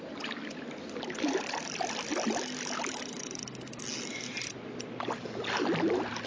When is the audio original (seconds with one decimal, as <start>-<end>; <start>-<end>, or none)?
0.0-6.3